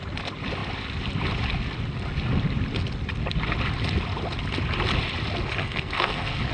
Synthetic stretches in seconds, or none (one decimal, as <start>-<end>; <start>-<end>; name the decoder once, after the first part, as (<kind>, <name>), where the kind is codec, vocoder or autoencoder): 5.6-6.5 (codec, SNAC)